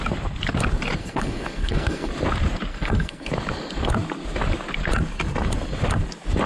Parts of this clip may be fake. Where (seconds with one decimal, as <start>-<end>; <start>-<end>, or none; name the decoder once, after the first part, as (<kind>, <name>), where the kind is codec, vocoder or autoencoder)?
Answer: 1.0-2.1 (codec, SNAC); 2.7-3.3